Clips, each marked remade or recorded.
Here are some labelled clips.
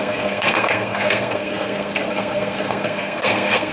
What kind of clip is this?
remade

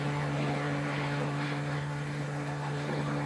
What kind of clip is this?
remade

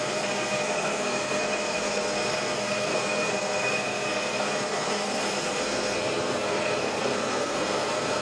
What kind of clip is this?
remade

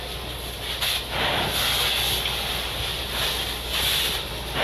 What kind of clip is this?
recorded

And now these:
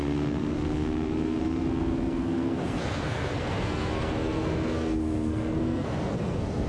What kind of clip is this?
remade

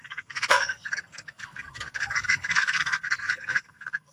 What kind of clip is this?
remade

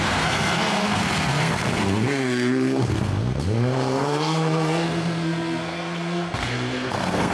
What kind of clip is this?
remade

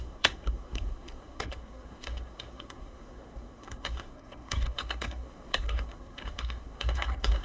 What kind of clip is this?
remade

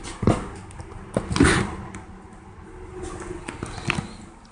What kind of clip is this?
recorded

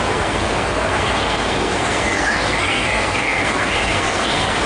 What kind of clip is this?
remade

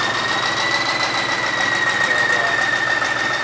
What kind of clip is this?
recorded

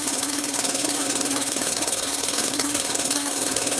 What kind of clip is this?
remade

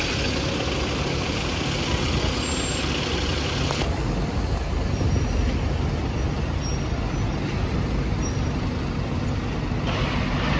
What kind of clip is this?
recorded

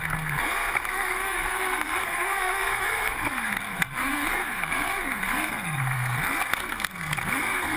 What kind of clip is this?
remade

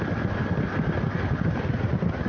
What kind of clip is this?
recorded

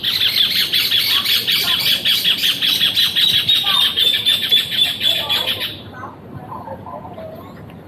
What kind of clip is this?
recorded